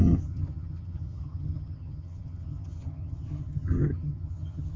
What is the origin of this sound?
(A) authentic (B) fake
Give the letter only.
B